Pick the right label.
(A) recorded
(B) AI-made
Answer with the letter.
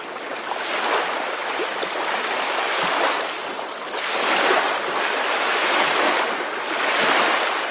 A